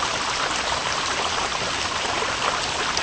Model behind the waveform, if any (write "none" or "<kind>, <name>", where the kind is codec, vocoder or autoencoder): none